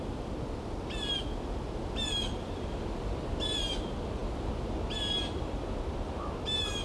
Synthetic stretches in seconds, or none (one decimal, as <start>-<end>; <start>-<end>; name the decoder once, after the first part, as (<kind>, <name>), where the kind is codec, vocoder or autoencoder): none